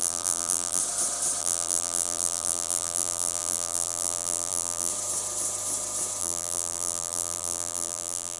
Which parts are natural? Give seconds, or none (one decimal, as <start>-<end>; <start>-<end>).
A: 0.8-1.4; 4.9-6.2